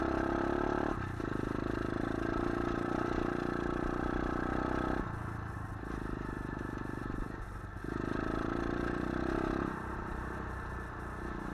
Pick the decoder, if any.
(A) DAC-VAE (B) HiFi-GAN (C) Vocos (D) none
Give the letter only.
D